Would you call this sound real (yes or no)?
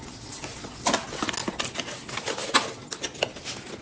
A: yes